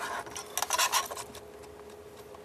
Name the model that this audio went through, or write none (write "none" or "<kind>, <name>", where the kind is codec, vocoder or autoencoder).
none